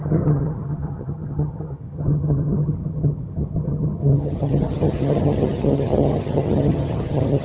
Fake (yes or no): yes